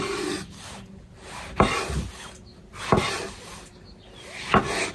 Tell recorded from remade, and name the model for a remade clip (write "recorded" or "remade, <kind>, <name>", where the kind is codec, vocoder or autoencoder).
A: recorded